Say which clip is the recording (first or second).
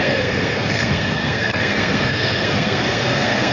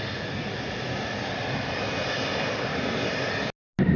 second